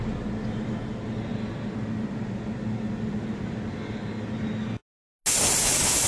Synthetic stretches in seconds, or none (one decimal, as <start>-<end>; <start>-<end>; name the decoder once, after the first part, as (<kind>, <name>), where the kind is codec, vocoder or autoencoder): none